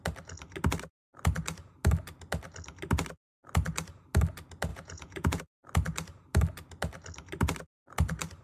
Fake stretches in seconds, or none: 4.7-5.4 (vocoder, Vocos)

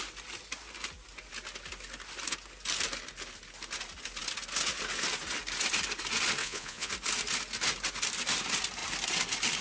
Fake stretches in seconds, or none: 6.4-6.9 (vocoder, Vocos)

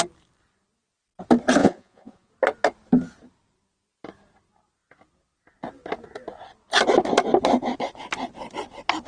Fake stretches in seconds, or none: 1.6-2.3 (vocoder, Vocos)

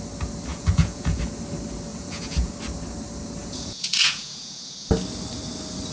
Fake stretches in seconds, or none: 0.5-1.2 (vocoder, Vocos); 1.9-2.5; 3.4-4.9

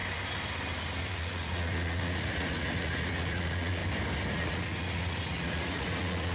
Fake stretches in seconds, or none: 1.1-3.8 (vocoder, Vocos); 4.3-6.3